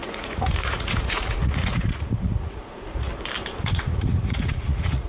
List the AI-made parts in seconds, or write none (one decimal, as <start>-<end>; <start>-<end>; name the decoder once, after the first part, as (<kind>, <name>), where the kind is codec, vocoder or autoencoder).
0.0-3.1 (vocoder, Vocos); 3.6-5.1